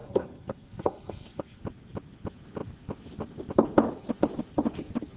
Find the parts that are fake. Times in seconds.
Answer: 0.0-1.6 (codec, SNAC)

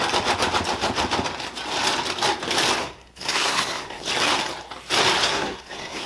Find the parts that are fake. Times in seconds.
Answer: 2.8-4.1 (codec, SNAC); 5.2-6.1

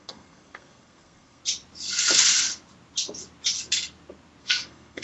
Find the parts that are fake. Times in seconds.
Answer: 0.0-1.4 (codec, SNAC); 4.4-5.0

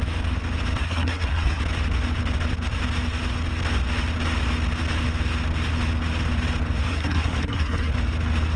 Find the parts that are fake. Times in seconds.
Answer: 0.8-1.6 (codec, SNAC); 6.9-7.9

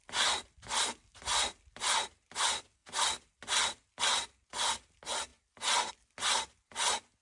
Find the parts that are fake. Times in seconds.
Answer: none

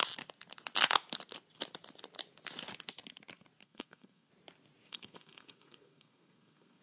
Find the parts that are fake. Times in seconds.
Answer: 3.6-4.3 (codec, SNAC); 4.9-6.8

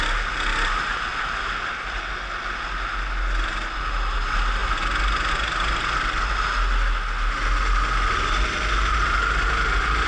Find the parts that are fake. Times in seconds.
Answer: none

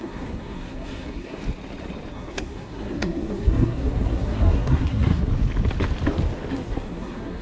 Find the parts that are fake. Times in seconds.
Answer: 0.0-1.4 (codec, SNAC); 2.1-5.3; 6.5-7.4